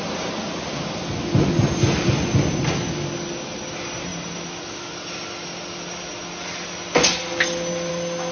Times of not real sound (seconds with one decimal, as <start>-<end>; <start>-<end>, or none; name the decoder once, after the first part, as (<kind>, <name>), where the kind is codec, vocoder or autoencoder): none